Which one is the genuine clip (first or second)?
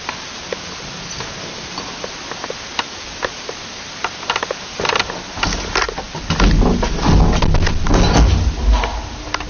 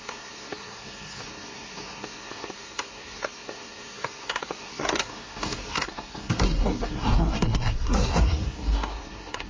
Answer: first